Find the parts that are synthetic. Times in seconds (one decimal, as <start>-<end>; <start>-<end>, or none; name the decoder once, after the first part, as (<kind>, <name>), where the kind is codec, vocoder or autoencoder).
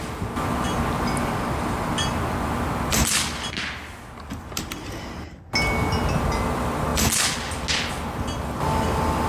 none